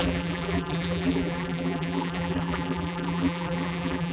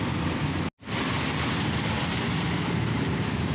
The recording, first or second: second